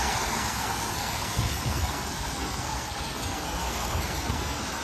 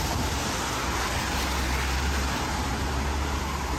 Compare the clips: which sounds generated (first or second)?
first